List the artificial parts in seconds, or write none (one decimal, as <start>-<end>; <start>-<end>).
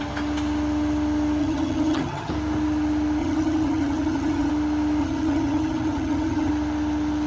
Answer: 1.4-2.3; 3.2-4.5; 5.0-6.5